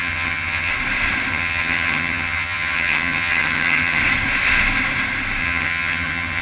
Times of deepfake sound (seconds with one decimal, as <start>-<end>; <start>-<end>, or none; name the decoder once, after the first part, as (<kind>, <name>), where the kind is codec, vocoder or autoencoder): 0.0-0.7 (vocoder, HiFi-GAN); 1.3-4.0; 5.4-6.4